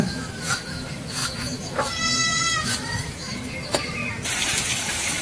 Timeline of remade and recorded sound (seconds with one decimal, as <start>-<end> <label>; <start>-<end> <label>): 0.0-4.0 remade; 4.0-4.7 recorded; 4.7-5.2 remade